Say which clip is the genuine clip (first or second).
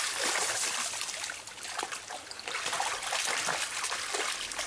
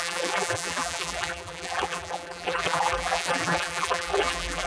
first